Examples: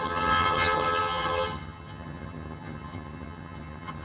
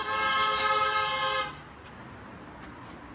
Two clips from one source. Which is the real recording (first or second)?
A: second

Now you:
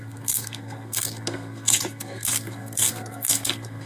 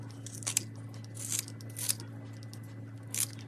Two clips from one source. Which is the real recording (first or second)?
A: second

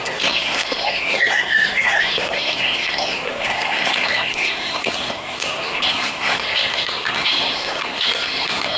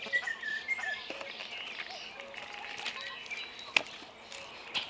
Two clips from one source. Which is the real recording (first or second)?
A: second